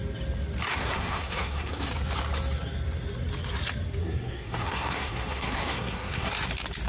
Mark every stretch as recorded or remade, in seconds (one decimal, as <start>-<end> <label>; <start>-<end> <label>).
0.0-0.7 recorded; 0.7-1.8 remade; 1.8-4.0 recorded; 4.0-6.3 remade; 6.3-6.9 recorded